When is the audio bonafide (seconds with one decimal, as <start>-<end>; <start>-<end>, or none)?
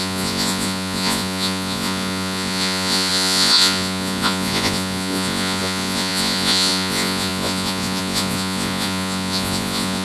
none